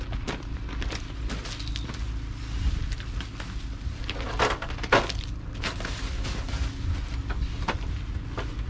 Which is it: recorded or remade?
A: recorded